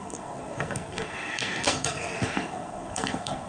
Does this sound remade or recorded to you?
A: remade